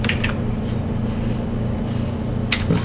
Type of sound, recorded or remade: recorded